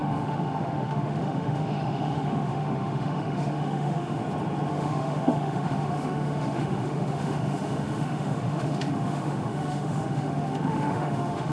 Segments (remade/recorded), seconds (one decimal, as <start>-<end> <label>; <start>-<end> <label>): 0.0-4.2 remade; 4.2-4.7 recorded; 4.7-11.5 remade